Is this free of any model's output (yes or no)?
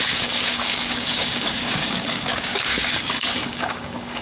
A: no